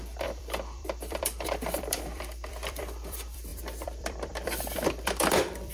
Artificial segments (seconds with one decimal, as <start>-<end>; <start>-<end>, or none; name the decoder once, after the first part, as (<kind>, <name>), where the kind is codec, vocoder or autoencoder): 0.0-5.7 (vocoder, BigVGAN v2)